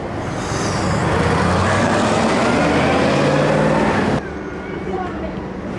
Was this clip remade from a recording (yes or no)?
no